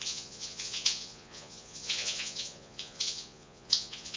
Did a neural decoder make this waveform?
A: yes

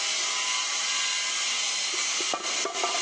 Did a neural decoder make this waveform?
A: no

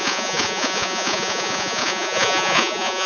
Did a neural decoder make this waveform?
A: yes